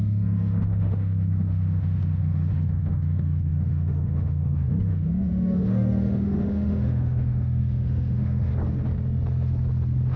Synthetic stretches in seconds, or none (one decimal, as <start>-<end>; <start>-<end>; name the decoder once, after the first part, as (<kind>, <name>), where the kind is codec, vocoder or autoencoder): 0.0-8.5 (autoencoder, DAC-VAE)